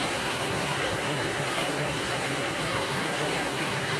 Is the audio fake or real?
fake